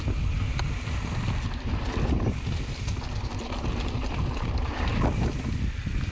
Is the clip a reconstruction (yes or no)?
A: no